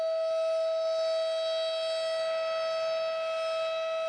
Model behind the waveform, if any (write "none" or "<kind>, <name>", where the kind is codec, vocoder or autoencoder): none